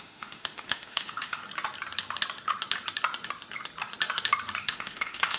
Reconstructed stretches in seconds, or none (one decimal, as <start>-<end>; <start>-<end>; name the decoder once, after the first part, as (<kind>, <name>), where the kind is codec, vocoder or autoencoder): 0.0-1.4 (autoencoder, DAC-VAE); 4.6-5.4